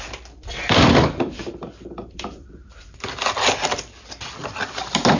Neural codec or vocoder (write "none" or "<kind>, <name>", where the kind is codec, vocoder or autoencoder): vocoder, BigVGAN v2